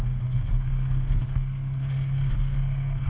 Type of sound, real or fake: fake